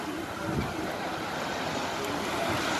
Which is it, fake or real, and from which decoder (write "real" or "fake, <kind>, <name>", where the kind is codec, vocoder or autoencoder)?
real